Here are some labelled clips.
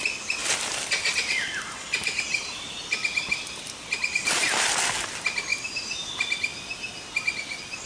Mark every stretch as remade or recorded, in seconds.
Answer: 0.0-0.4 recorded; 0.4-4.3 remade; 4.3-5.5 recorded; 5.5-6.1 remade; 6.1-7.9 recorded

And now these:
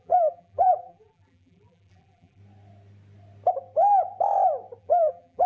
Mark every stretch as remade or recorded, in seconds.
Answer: 0.0-2.4 remade; 2.4-4.8 recorded; 4.8-5.5 remade

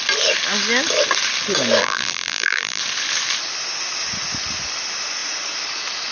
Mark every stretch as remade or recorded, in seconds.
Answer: 0.0-1.8 recorded; 1.8-2.8 remade; 2.8-6.1 recorded